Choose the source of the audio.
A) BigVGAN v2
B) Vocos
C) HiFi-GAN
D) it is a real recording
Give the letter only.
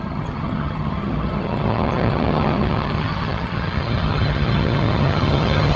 C